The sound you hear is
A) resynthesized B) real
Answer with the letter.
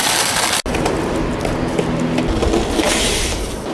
B